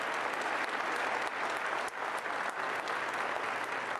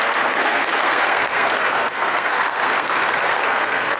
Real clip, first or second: first